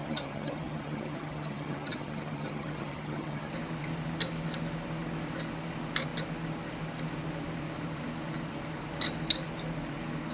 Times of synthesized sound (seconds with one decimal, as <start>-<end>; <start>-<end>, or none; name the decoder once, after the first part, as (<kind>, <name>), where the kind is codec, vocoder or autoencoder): 0.0-3.5 (vocoder, HiFi-GAN)